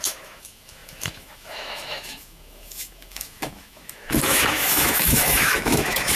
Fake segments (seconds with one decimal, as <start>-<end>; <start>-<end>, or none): 0.0-6.2

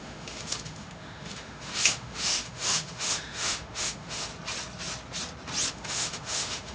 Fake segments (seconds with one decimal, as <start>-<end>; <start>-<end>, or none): 0.0-4.3; 5.7-6.7

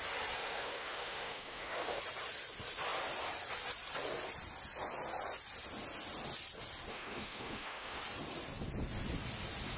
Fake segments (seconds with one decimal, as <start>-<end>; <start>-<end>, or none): 0.4-2.0; 6.9-8.0

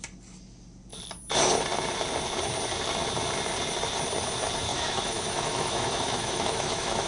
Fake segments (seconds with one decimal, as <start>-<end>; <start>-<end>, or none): 4.7-7.1

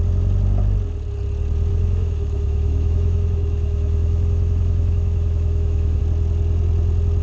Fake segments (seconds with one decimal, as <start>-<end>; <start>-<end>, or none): 1.7-6.0

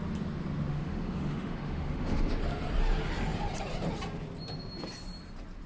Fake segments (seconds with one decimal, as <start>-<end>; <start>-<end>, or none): 0.7-2.3

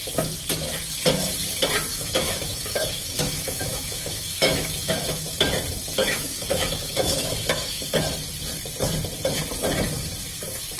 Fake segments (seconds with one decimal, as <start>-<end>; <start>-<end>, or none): 1.9-5.2; 6.0-7.8

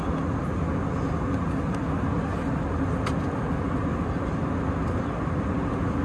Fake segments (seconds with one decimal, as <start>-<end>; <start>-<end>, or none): none